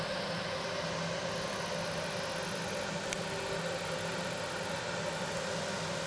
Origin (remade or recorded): recorded